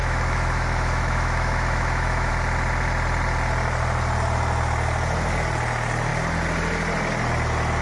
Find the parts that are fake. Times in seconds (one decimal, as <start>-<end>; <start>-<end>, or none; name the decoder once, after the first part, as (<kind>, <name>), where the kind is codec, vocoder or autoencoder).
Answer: 0.0-2.3 (autoencoder, DAC-VAE)